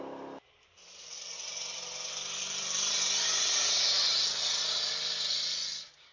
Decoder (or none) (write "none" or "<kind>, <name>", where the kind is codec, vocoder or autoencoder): none